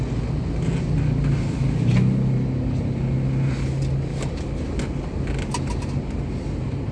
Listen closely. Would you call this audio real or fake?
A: real